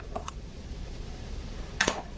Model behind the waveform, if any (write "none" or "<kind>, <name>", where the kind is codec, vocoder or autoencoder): vocoder, Vocos